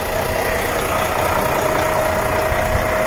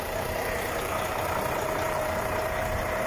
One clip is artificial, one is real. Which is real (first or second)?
first